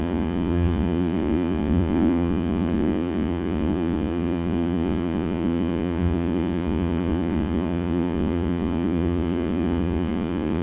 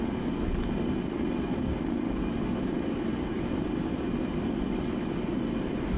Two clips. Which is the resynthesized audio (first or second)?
first